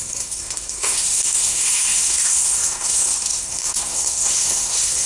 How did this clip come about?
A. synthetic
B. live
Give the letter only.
A